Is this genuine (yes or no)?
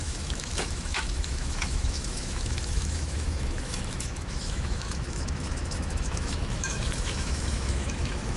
no